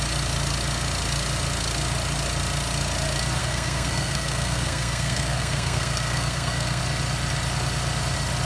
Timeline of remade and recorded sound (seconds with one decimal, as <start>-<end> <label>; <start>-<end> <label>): 0.0-3.4 recorded; 3.4-6.8 remade; 6.8-8.4 recorded